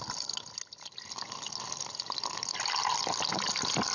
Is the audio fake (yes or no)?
no